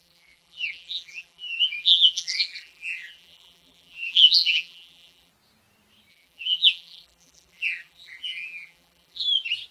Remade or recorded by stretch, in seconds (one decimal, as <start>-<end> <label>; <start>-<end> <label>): 0.0-5.3 remade; 5.3-6.1 recorded; 6.1-9.2 remade; 9.2-9.7 recorded